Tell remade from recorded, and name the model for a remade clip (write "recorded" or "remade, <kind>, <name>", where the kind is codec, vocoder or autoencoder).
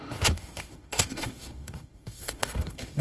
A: remade, autoencoder, DAC-VAE